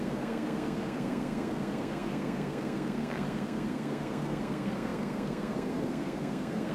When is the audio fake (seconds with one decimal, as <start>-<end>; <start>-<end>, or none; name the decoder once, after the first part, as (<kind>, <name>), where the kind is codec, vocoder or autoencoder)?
0.0-6.7 (codec, SNAC)